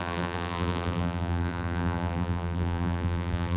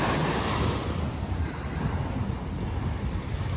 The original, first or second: second